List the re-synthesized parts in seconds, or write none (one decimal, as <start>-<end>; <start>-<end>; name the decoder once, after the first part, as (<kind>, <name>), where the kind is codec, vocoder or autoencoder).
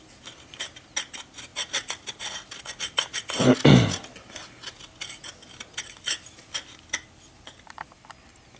none